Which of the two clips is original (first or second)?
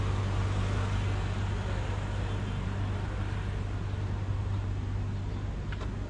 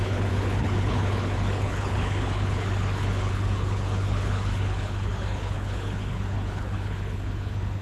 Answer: first